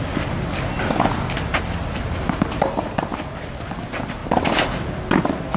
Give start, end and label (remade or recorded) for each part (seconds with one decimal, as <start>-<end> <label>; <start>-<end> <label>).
0.0-4.2 recorded; 4.2-4.9 remade; 4.9-5.6 recorded